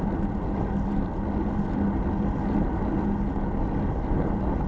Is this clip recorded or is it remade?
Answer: recorded